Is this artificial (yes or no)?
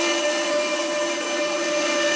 no